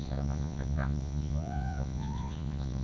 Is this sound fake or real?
fake